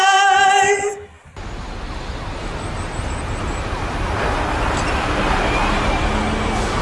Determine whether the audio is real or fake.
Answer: real